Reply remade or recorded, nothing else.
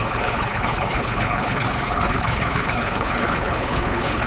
remade